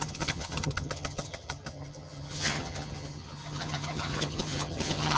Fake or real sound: fake